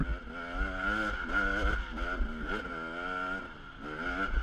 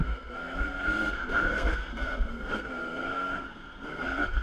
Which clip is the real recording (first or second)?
first